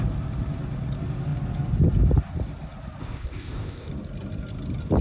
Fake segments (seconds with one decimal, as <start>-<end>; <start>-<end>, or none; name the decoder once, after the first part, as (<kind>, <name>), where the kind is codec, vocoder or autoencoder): 3.0-3.9 (codec, ZipCodec)